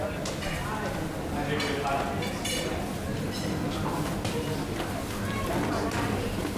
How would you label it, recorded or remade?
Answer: recorded